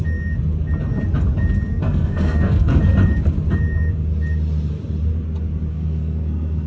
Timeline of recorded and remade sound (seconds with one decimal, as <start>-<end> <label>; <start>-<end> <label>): 0.0-1.7 recorded; 1.7-2.8 remade; 2.8-5.7 recorded; 5.7-6.7 remade